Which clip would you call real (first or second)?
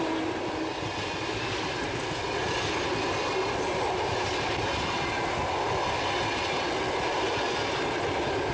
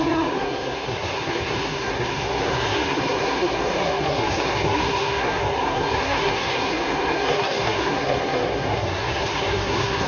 first